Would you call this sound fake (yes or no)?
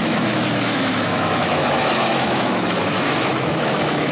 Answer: yes